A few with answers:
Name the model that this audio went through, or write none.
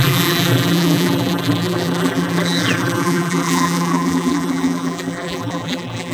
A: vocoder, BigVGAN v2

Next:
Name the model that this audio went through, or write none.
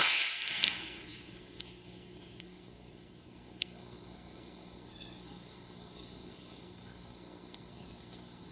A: codec, SNAC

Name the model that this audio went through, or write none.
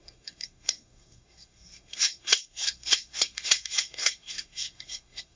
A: codec, SNAC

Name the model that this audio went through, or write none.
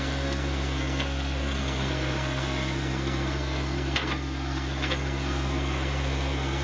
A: codec, SNAC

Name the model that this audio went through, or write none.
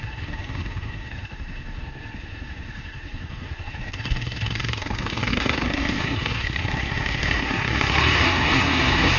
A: codec, SNAC